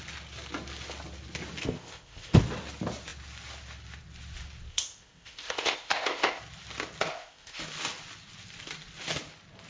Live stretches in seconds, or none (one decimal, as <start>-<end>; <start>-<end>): 0.0-1.6; 2.4-4.7; 6.4-7.1; 7.6-9.7